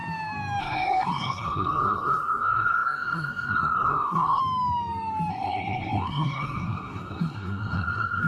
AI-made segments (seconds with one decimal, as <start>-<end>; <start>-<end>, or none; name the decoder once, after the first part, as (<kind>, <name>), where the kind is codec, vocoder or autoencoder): 0.6-4.4 (codec, SNAC); 5.3-8.3